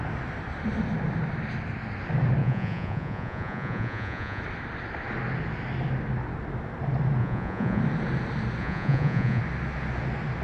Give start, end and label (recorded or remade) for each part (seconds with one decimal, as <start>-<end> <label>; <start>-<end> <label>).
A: 0.0-2.4 recorded; 2.4-4.4 remade; 4.4-7.2 recorded; 7.2-7.8 remade; 7.8-8.6 recorded; 8.6-9.4 remade; 9.4-10.4 recorded